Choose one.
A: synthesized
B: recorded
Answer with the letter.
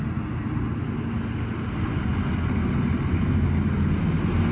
B